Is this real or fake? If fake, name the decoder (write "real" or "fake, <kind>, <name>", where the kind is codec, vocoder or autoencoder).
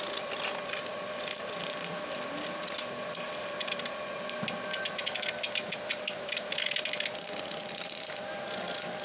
real